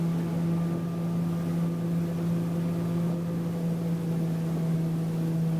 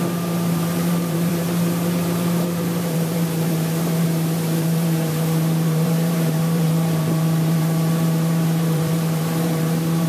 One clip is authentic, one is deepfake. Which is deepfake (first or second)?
second